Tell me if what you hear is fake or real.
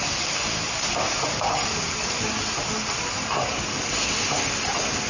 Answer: real